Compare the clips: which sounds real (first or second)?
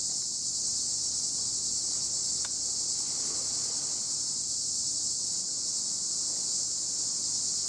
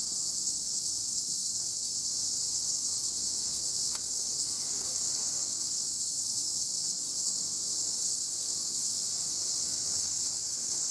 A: first